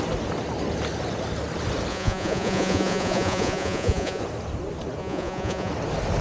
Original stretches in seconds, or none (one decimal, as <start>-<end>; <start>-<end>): 0.0-1.9; 4.2-5.0; 5.7-6.2